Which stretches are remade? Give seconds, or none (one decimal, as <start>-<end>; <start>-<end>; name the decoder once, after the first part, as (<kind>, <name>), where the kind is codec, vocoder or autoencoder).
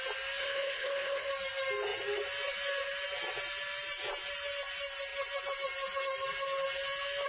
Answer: 0.4-1.3 (codec, HILCodec)